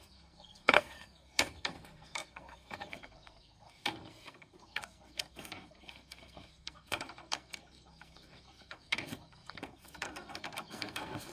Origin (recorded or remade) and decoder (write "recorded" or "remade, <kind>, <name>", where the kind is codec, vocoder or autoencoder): remade, codec, SNAC